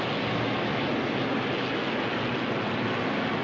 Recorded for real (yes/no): yes